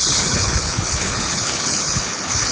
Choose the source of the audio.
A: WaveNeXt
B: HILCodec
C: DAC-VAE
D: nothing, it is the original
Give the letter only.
B